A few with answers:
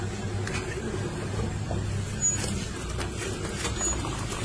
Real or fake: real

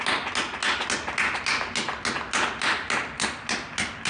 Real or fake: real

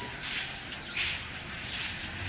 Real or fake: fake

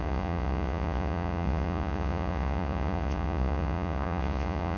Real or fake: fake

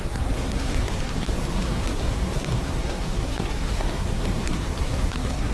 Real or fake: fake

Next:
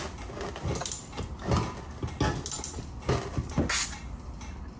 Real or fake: real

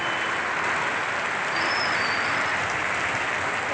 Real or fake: real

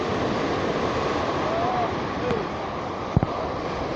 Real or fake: fake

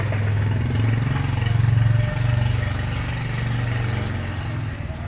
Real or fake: real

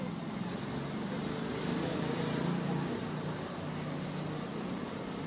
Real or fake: real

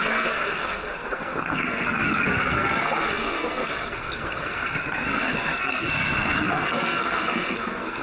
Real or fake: fake